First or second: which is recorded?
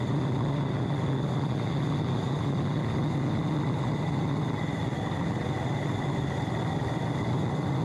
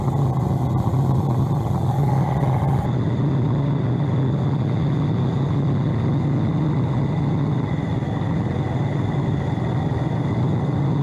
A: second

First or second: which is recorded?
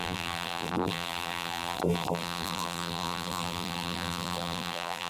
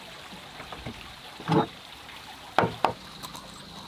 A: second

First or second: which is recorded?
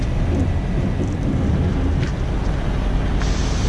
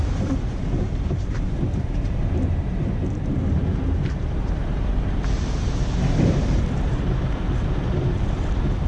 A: first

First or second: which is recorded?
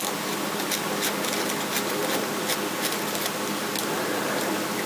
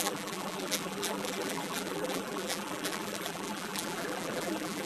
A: first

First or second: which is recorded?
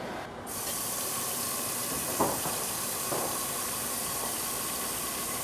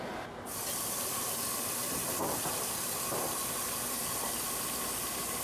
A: second